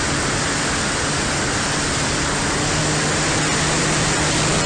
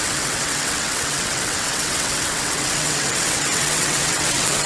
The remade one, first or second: second